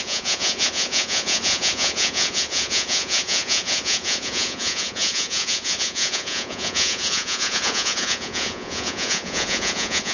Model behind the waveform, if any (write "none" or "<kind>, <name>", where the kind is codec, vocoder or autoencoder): vocoder, Vocos